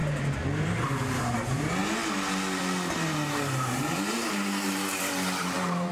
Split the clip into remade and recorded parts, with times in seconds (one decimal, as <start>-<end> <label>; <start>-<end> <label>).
0.0-1.2 recorded; 1.2-1.8 remade; 1.8-2.6 recorded; 2.6-5.9 remade